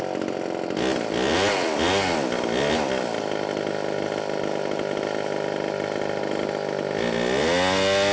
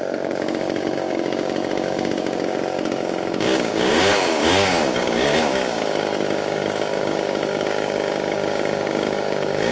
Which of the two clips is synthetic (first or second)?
second